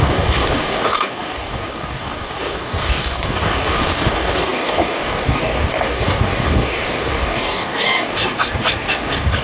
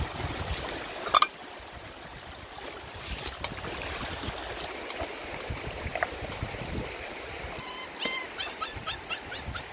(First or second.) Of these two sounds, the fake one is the first